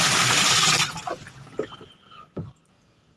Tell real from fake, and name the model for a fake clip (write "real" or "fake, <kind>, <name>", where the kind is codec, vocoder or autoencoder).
fake, vocoder, BigVGAN v2